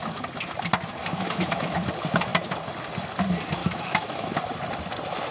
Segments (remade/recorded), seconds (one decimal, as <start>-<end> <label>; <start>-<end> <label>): 0.0-1.0 recorded; 1.0-1.9 remade; 1.9-3.6 recorded; 3.6-4.4 remade; 4.4-5.3 recorded